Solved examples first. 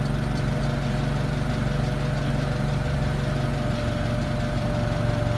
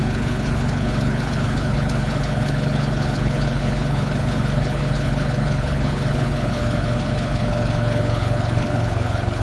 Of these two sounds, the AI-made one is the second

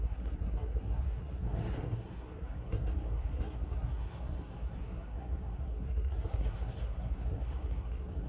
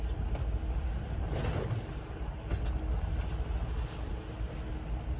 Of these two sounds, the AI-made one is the first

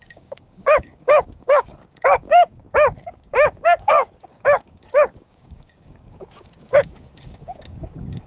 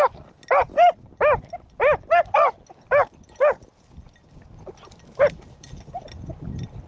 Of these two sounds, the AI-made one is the first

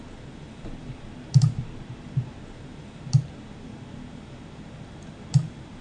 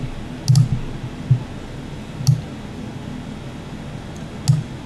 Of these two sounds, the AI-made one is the first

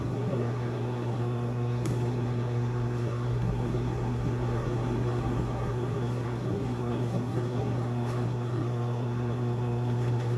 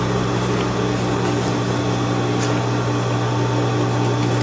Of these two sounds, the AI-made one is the first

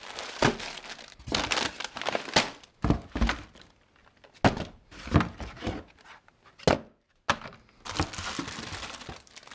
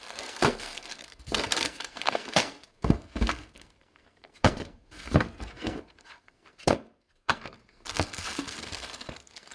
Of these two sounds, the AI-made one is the second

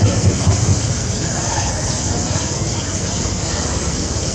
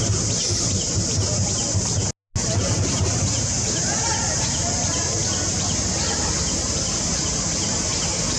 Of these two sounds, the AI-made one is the first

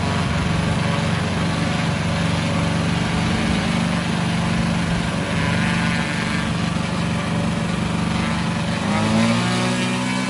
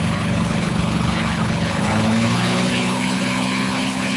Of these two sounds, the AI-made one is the second